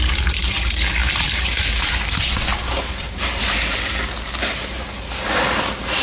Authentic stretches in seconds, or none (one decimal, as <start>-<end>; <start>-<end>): 0.0-1.0; 3.8-4.3; 5.1-6.0

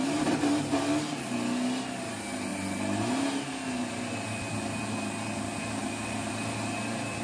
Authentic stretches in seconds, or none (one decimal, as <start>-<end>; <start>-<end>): 0.0-7.2

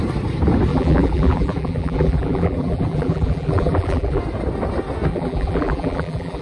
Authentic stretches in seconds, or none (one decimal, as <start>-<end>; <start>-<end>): 0.0-0.7; 4.2-5.1